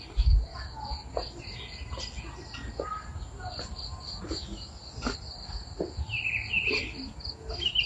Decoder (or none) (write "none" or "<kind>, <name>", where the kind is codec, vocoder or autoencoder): none